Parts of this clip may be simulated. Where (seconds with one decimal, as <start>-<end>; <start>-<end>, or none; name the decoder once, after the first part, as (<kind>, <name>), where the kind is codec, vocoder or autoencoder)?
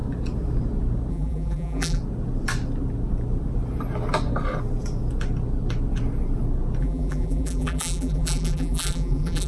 1.1-2.0 (vocoder, BigVGAN v2); 6.8-9.5